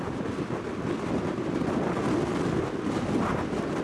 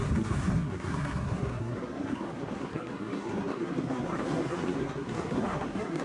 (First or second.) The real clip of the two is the first